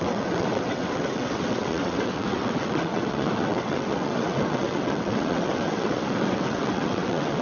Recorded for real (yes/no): no